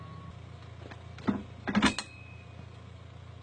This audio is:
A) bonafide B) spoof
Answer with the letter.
A